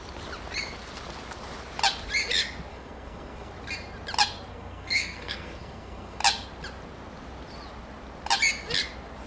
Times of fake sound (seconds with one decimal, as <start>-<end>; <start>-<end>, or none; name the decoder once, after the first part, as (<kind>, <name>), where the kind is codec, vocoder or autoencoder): 2.7-3.5 (codec, SNAC); 4.5-6.2

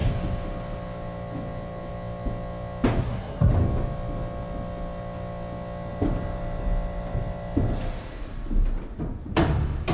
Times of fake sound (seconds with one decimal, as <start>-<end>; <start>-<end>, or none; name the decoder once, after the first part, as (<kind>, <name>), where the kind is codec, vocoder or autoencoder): 3.0-3.5 (codec, SNAC)

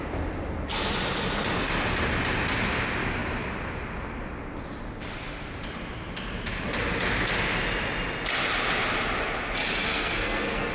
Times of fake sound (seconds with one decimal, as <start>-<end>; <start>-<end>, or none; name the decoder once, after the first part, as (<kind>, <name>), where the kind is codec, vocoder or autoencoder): 9.9-10.7 (codec, SNAC)

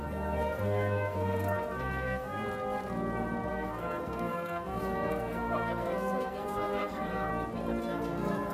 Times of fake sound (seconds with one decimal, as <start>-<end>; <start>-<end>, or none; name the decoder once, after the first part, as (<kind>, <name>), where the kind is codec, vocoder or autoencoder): 0.0-2.4 (codec, SNAC); 3.5-7.3; 7.8-8.5

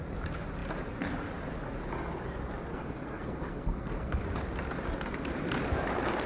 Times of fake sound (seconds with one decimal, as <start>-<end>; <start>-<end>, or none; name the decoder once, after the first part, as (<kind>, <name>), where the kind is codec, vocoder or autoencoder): 2.7-4.2 (codec, SNAC)

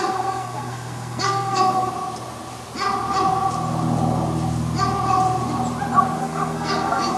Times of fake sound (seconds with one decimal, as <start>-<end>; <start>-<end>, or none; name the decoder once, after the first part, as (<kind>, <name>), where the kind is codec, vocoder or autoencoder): 0.0-1.9 (codec, SNAC); 6.2-7.2

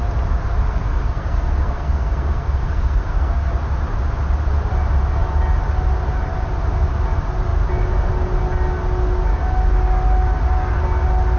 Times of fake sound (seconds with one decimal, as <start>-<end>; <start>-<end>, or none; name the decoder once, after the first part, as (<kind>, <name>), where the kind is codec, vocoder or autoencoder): 0.7-3.5 (codec, SNAC)